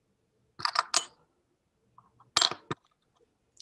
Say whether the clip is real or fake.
real